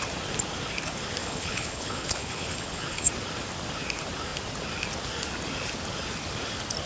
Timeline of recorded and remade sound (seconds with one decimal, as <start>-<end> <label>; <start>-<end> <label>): 0.0-1.2 recorded; 1.2-3.1 remade; 3.1-6.9 recorded